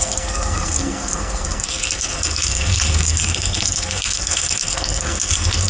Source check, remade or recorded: remade